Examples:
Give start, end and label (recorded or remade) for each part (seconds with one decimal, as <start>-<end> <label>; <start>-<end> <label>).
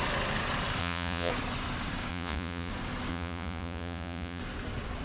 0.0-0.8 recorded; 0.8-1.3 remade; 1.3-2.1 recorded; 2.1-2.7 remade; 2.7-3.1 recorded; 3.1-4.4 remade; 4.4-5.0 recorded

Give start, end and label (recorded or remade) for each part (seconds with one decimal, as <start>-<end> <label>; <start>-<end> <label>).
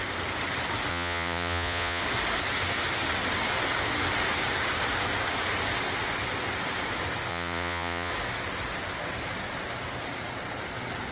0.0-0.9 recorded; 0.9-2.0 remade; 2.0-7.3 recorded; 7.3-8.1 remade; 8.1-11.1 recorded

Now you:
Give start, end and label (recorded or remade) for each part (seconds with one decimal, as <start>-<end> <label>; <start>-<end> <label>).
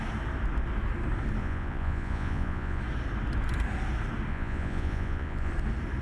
0.0-1.4 recorded; 1.4-2.8 remade; 2.8-4.3 recorded; 4.3-5.5 remade; 5.5-6.0 recorded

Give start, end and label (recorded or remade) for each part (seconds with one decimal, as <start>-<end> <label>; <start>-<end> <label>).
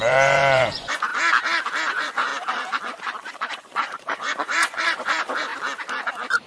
0.0-1.1 remade; 1.1-1.9 recorded; 1.9-2.3 remade; 2.3-3.4 recorded; 3.4-5.5 remade; 5.5-6.5 recorded